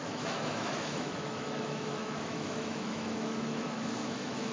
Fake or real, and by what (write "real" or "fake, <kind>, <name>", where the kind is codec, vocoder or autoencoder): fake, autoencoder, DAC-VAE